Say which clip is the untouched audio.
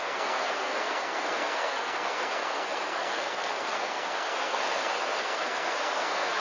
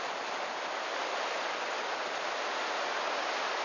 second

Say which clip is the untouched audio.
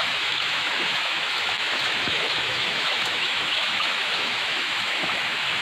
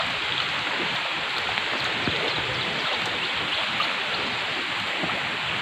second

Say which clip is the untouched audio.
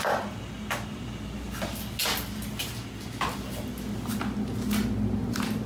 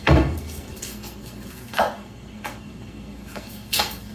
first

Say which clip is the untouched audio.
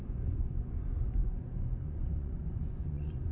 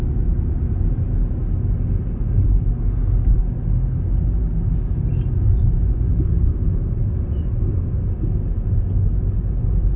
second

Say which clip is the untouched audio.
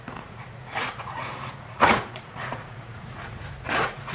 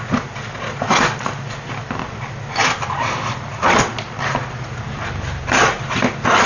second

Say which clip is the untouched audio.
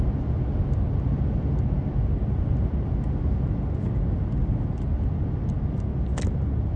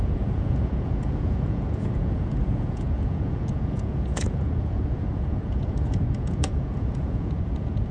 first